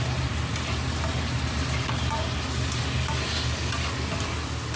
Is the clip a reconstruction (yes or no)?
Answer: no